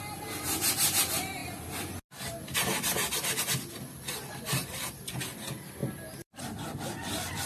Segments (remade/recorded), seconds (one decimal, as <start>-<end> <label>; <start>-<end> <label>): 0.0-4.6 recorded; 4.6-5.1 remade; 5.1-5.8 recorded; 5.8-6.4 remade; 6.4-7.5 recorded